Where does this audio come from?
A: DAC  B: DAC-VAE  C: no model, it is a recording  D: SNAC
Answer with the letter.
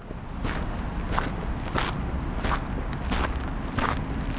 C